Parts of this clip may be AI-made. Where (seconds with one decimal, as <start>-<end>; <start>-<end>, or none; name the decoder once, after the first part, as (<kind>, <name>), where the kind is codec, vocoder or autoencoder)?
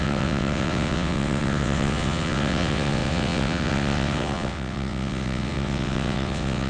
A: 0.0-6.7 (vocoder, WaveNeXt)